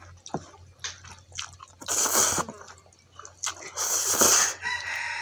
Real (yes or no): yes